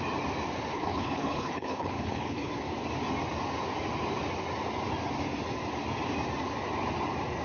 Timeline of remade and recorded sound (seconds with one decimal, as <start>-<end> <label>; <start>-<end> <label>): 0.0-0.7 recorded; 0.7-2.5 remade; 2.5-7.4 recorded